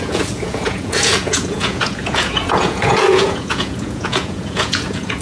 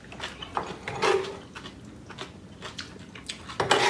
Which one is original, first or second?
second